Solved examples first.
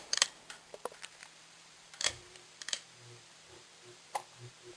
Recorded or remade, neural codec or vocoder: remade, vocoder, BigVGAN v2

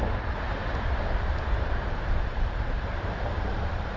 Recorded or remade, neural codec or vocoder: remade, vocoder, BigVGAN v2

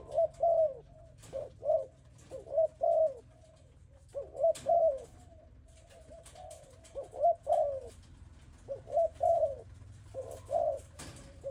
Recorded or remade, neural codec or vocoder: remade, vocoder, BigVGAN v2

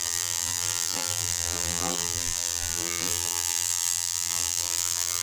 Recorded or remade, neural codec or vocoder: remade, vocoder, BigVGAN v2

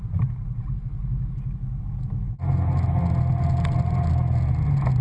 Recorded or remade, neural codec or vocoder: recorded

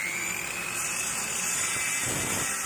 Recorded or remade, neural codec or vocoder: remade, vocoder, BigVGAN v2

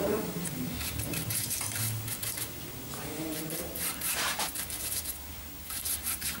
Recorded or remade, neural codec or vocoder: remade, vocoder, BigVGAN v2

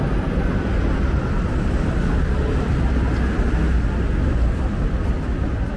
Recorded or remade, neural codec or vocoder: recorded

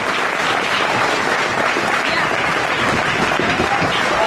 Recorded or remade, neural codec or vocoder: remade, vocoder, BigVGAN v2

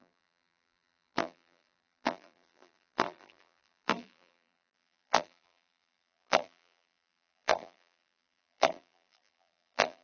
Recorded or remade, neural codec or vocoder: remade, vocoder, BigVGAN v2